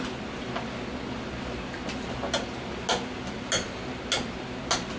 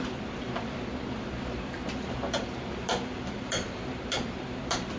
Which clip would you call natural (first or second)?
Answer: first